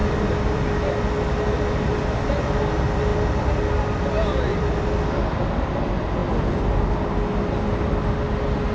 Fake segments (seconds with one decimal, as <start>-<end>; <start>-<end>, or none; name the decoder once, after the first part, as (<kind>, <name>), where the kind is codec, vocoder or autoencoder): none